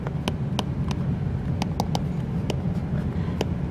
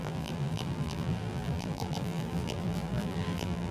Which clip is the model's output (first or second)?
second